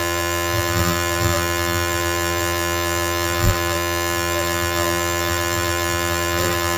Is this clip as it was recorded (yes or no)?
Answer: no